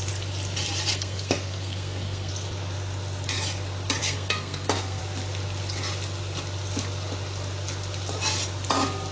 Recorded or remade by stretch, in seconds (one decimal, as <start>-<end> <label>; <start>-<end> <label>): 0.0-0.9 recorded; 0.9-2.3 remade; 2.3-4.0 recorded; 4.0-5.0 remade; 5.0-9.1 recorded